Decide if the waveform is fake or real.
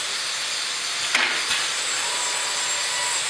real